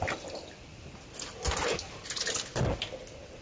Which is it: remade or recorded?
recorded